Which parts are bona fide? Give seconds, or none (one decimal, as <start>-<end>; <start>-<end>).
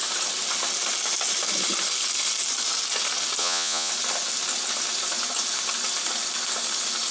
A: 0.0-3.4; 3.9-7.1